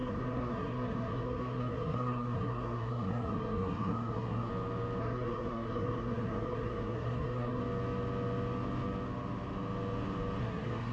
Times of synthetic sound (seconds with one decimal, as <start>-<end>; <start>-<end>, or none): 0.0-4.5; 5.0-7.6; 10.4-10.9